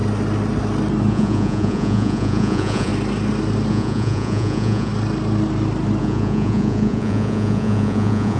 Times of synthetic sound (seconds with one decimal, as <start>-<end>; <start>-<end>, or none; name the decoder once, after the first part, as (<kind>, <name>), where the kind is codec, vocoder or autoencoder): 1.1-2.9 (vocoder, Vocos); 3.7-4.9; 6.0-8.4